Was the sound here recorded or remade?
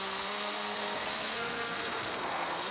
remade